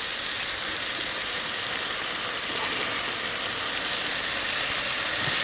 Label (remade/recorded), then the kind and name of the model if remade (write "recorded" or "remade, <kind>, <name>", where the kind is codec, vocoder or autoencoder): recorded